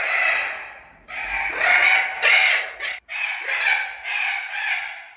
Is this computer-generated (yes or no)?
no